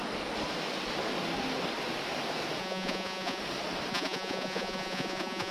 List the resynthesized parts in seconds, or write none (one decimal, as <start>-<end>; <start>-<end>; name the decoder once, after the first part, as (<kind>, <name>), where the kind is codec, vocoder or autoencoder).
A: 2.6-3.4 (vocoder, Vocos); 3.9-5.5